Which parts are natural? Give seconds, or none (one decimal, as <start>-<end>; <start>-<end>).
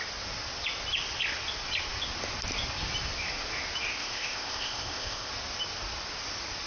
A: 0.0-4.0; 5.3-6.7